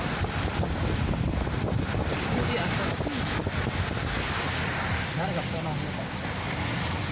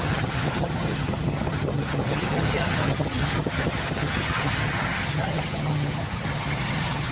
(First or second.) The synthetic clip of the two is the second